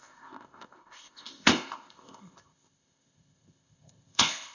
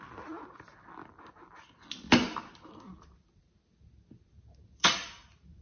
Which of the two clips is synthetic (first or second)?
first